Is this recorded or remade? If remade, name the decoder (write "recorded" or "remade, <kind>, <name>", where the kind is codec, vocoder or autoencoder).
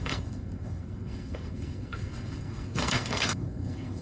remade, codec, SNAC